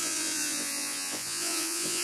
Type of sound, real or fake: fake